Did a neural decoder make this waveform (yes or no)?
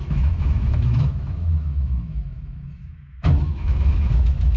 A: yes